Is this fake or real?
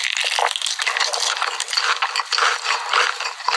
real